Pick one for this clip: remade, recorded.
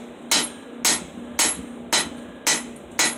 recorded